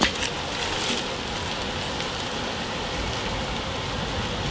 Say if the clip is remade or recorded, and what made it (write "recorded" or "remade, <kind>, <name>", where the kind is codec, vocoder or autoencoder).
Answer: recorded